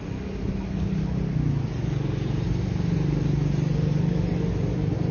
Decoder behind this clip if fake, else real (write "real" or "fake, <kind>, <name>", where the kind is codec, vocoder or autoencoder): real